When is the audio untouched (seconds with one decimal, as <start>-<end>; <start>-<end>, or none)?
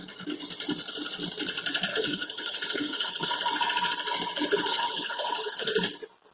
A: 0.0-1.9; 3.3-4.7; 5.7-6.3